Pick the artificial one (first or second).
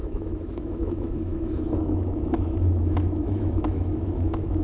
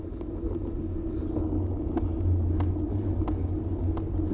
first